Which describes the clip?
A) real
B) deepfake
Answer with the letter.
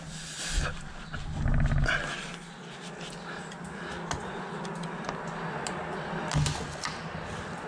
A